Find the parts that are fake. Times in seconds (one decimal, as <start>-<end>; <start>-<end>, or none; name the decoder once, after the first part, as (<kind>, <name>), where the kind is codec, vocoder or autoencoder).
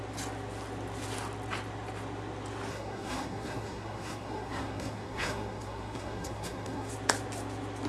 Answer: 2.7-6.9 (codec, SNAC)